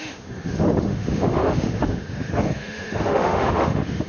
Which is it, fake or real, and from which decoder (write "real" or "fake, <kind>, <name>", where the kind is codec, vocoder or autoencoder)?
fake, autoencoder, DAC-VAE